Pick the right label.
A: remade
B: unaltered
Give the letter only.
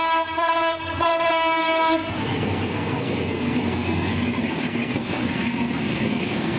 A